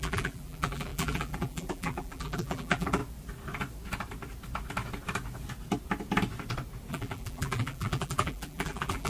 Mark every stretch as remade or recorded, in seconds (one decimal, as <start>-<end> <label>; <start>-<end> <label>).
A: 0.0-3.0 remade; 3.0-6.9 recorded; 6.9-9.1 remade